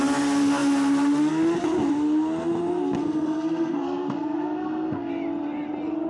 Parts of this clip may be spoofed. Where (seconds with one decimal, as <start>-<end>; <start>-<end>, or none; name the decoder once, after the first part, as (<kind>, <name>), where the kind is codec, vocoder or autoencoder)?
3.0-5.1 (codec, SNAC)